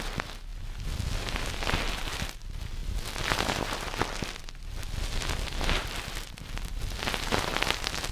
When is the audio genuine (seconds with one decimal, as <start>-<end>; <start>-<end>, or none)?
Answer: 0.0-8.1